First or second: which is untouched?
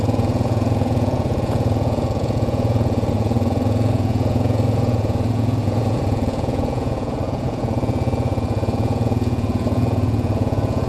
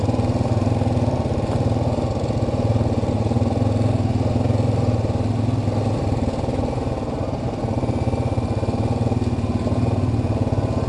second